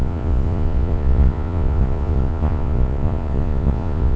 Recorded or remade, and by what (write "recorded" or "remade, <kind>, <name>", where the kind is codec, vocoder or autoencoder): remade, vocoder, Vocos